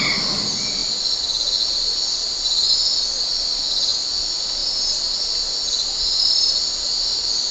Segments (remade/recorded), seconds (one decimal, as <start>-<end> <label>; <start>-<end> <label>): 0.0-7.5 recorded